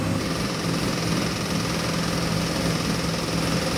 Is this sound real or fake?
real